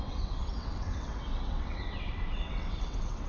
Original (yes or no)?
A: no